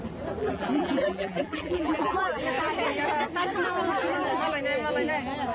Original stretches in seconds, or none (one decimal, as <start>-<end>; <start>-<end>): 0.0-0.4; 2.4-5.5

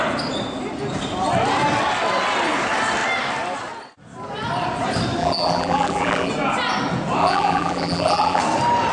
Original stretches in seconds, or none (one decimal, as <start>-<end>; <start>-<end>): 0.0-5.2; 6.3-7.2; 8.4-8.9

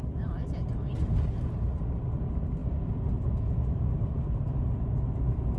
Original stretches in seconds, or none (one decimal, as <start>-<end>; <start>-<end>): 0.0-5.6

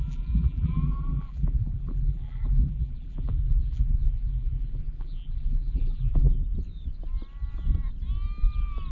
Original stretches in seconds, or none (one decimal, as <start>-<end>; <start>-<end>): 6.4-8.9

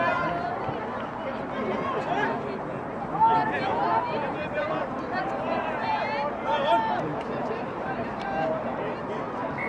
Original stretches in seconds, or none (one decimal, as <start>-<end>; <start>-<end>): 0.0-4.2; 5.9-7.1; 8.8-9.7

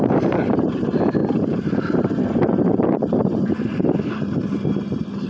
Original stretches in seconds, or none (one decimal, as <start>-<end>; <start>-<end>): none